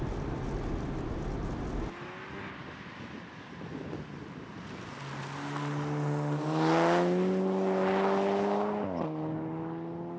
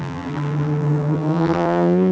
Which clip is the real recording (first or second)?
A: first